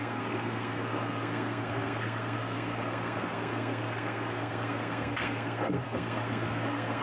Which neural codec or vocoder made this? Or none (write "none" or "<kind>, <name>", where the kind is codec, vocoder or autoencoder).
codec, SNAC